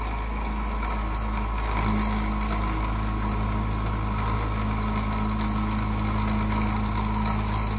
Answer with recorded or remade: recorded